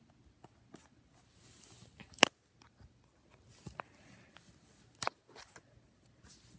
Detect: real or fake real